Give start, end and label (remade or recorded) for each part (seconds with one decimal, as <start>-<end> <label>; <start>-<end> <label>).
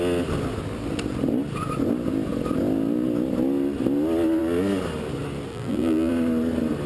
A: 0.0-5.5 recorded; 5.5-6.1 remade; 6.1-6.9 recorded